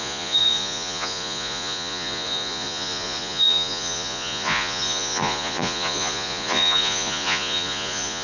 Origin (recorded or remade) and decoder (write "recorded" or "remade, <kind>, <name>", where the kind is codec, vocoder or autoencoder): remade, vocoder, Vocos